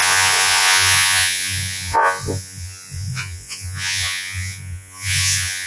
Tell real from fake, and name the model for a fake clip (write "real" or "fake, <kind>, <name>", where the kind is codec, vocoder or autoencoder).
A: fake, vocoder, Vocos